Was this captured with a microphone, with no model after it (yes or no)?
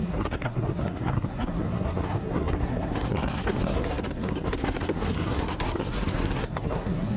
no